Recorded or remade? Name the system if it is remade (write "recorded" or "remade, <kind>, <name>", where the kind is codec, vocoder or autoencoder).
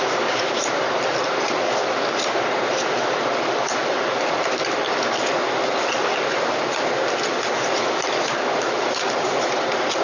remade, vocoder, BigVGAN v2